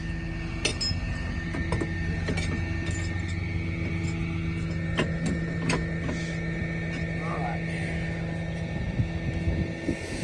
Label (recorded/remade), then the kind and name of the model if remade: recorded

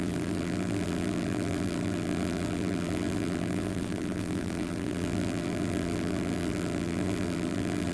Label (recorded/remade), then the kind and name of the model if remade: remade, vocoder, BigVGAN v2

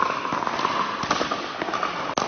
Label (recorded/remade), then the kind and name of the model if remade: recorded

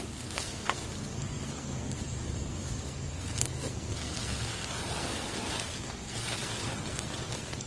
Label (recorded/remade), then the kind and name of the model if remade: remade, codec, SNAC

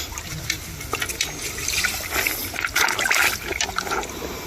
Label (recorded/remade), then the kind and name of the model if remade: recorded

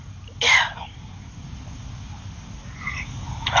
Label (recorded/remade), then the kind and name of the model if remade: recorded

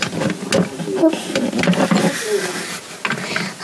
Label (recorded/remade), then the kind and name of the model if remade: recorded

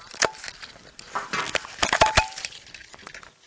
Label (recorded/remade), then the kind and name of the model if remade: recorded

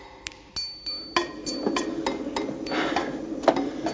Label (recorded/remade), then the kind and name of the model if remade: recorded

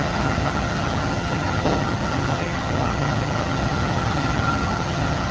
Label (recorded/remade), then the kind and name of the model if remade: remade, vocoder, HiFi-GAN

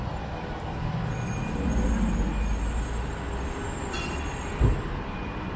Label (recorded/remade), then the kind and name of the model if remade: recorded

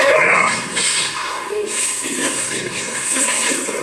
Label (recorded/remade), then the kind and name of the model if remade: remade, codec, SNAC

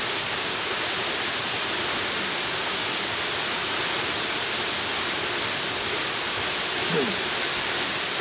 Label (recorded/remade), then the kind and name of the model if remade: recorded